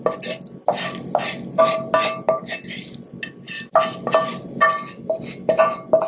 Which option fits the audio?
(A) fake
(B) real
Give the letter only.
B